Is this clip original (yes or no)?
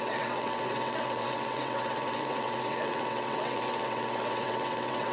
no